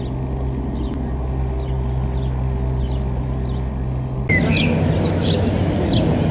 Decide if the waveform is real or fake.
real